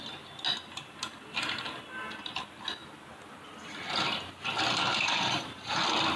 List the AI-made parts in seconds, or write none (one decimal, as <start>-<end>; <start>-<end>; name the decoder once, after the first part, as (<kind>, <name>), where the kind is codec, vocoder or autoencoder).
4.9-5.8 (vocoder, BigVGAN v2)